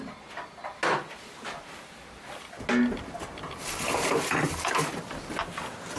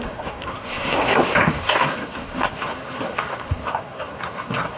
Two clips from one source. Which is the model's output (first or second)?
second